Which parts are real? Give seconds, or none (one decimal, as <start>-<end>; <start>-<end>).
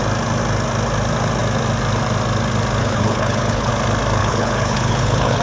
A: 0.0-2.8; 3.7-4.2